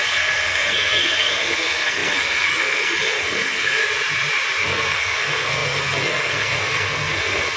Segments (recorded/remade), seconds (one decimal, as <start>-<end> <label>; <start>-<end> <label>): 0.0-3.8 remade; 3.8-4.6 recorded; 4.6-7.6 remade